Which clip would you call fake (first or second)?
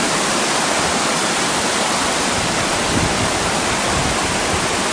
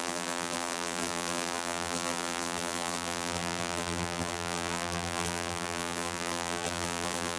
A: second